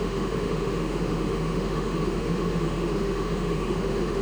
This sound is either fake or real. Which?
fake